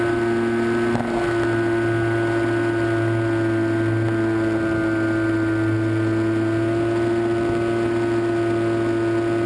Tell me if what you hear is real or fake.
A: real